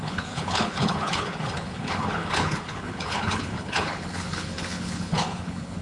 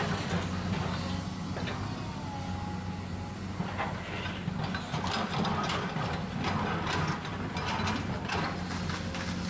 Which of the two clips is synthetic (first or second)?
first